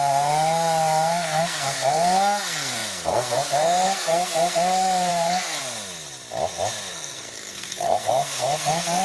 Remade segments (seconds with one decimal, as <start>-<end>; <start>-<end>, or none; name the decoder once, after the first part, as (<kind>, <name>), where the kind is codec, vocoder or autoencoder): 0.0-5.6 (codec, SNAC); 6.9-9.0